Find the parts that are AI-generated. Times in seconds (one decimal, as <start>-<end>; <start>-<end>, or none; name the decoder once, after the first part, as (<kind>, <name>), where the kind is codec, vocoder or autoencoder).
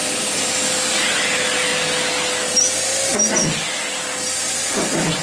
none